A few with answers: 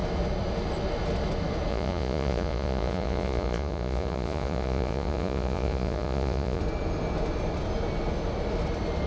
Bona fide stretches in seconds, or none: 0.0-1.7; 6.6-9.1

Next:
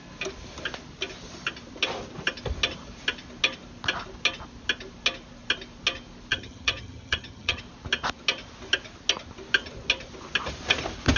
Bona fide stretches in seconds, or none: 0.0-6.3; 7.6-11.2

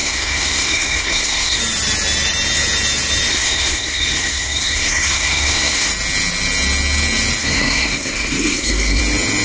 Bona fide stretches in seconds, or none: 1.6-3.3; 5.9-7.4; 9.0-9.4

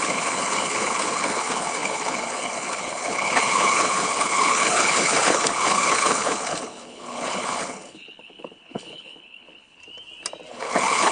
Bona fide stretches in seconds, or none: 9.8-10.5

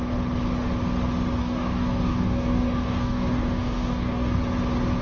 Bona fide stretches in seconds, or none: 0.0-1.4; 4.4-5.0

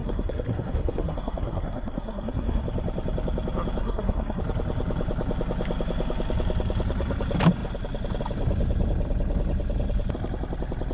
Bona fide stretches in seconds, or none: 2.6-3.8; 4.4-10.9